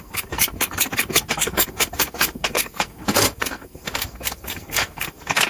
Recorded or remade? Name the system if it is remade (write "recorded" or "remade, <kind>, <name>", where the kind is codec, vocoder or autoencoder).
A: remade, codec, SNAC